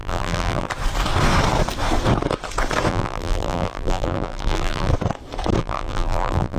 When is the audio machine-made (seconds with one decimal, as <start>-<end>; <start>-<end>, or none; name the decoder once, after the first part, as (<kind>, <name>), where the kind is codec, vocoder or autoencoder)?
0.0-0.7 (vocoder, BigVGAN v2); 2.9-4.9; 5.6-6.6